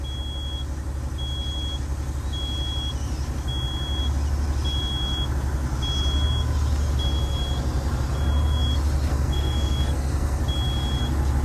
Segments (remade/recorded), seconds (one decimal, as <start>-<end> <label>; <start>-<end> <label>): 0.0-9.1 recorded; 9.1-10.4 remade; 10.4-11.4 recorded